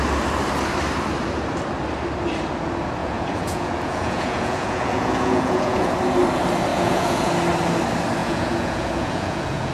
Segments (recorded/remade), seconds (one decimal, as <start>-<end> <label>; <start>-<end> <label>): 0.0-3.0 recorded; 3.0-5.9 remade; 5.9-6.7 recorded; 6.7-7.3 remade; 7.3-8.2 recorded; 8.2-9.7 remade